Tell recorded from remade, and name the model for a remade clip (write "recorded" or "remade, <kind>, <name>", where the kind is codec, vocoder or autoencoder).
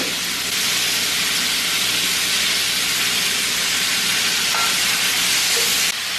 recorded